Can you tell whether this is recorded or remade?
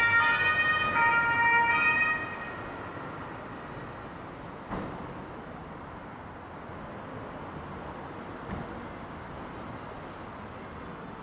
recorded